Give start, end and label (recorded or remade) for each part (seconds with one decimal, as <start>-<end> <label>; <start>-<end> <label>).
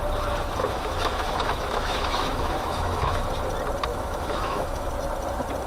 0.0-0.6 recorded; 0.6-3.2 remade; 3.2-3.9 recorded; 3.9-4.9 remade; 4.9-5.7 recorded